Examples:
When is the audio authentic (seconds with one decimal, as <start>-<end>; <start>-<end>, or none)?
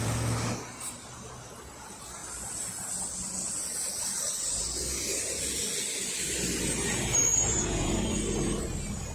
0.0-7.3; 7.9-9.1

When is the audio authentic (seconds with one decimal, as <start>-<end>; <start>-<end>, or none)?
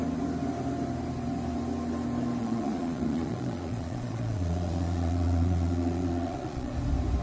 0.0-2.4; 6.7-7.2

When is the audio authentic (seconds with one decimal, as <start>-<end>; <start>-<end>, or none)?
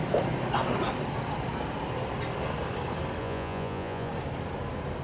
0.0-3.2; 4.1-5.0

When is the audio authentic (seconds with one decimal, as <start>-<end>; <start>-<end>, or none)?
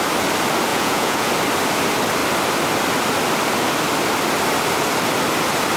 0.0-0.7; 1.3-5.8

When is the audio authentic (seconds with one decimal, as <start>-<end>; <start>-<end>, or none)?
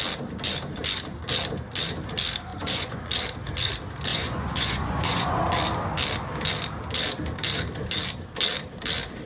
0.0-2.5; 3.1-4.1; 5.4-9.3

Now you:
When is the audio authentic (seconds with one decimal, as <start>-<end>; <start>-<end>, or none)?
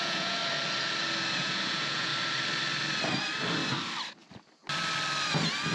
0.4-1.4; 2.1-5.7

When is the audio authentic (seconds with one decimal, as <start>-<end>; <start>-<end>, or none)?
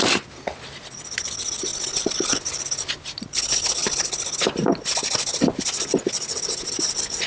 0.0-7.3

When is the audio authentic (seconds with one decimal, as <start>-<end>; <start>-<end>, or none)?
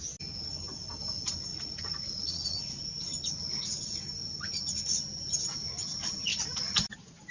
0.0-1.5; 2.8-7.3